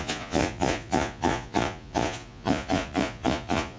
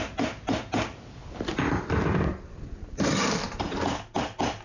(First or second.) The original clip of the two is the second